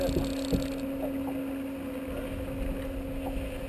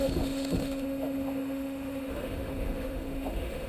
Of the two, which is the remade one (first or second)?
second